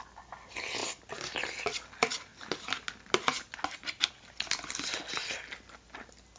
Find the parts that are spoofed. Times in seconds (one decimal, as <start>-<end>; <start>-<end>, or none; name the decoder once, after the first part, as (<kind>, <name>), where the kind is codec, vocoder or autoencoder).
none